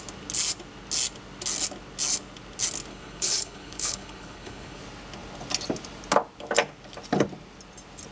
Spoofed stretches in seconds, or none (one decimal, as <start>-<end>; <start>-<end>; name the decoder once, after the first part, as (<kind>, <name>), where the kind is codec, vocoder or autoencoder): 2.9-4.8 (codec, HILCodec)